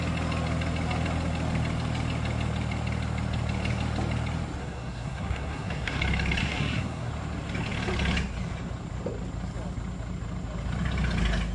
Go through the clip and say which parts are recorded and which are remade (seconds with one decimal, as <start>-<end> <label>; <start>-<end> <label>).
0.0-4.6 recorded; 4.6-6.0 remade; 6.0-6.4 recorded; 6.4-7.1 remade; 7.1-11.5 recorded